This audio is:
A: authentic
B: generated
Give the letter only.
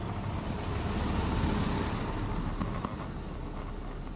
A